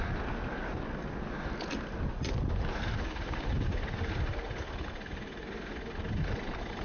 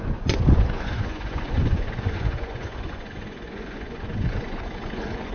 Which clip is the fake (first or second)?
second